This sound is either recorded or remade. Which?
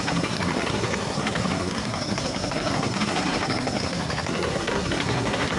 remade